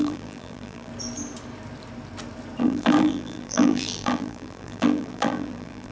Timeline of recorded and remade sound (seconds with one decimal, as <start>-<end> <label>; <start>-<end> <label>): 0.0-0.9 remade; 0.9-2.6 recorded; 2.6-5.9 remade